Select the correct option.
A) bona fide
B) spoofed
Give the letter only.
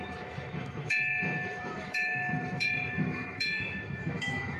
B